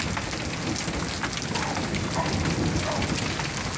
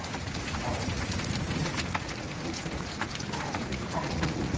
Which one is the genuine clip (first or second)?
first